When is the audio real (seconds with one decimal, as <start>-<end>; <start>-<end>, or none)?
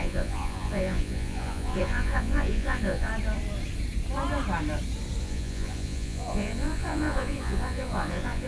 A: 3.1-5.2